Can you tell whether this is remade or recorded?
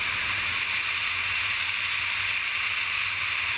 recorded